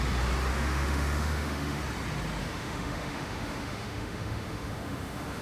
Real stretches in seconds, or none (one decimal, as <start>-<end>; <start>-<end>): 0.0-0.5; 1.8-2.4